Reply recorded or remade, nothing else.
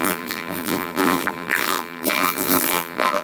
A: remade